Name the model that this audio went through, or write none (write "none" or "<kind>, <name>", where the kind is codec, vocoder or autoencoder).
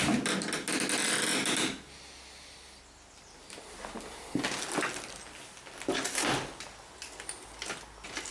none